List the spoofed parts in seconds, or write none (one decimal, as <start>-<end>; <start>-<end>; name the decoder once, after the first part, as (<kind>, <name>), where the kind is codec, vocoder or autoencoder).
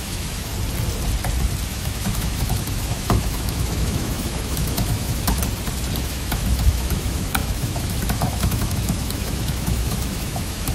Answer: 0.0-0.5 (autoencoder, DAC-VAE); 1.7-5.4; 6.0-10.7